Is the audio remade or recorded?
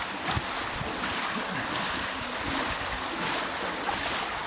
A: recorded